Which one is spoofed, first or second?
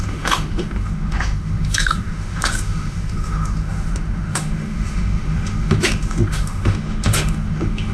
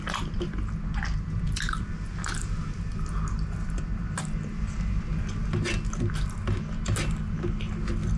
first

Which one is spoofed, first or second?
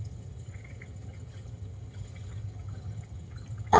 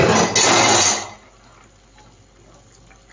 first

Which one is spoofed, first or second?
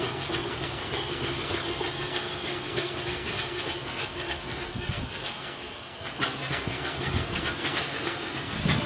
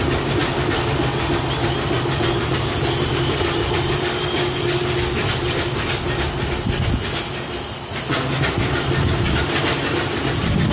first